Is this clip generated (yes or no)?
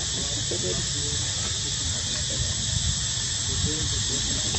no